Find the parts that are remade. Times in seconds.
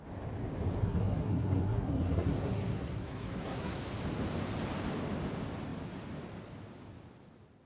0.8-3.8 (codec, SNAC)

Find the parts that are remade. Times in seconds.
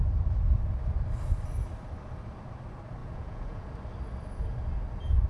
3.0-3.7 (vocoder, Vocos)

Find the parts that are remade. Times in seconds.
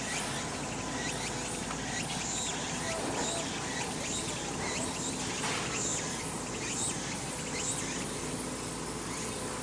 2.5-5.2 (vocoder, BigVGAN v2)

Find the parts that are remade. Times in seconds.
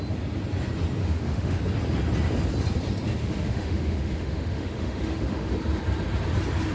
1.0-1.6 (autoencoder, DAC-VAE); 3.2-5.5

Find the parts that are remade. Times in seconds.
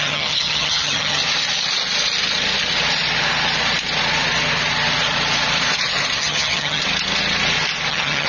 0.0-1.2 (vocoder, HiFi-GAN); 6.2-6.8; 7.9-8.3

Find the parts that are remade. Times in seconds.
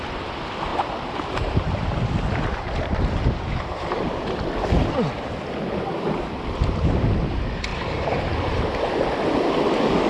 0.7-4.1 (vocoder, BigVGAN v2); 7.7-8.3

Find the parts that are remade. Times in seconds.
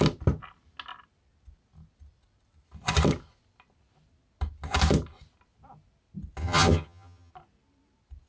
6.4-7.3 (vocoder, HiFi-GAN)